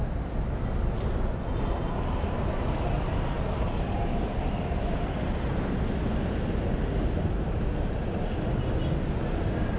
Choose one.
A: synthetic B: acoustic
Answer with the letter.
B